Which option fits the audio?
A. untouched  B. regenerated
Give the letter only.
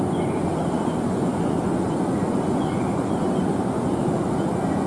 B